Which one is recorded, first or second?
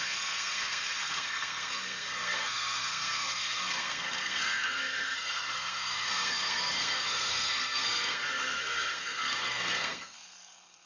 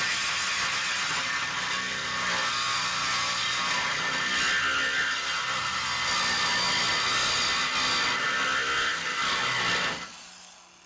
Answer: second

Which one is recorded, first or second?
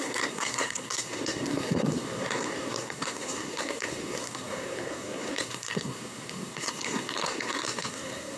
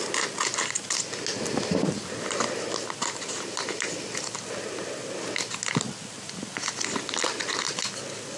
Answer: second